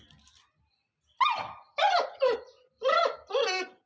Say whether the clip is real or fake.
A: real